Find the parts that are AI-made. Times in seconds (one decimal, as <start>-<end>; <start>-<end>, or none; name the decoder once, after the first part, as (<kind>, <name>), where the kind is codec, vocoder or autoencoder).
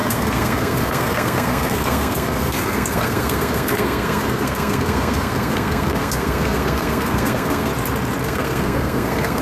0.0-7.7 (codec, SNAC); 8.2-9.4